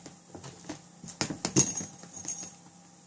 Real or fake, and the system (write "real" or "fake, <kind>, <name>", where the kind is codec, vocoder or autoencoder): real